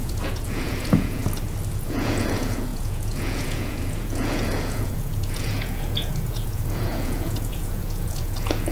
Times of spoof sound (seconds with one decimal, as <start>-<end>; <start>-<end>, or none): 0.0-1.2; 1.7-8.7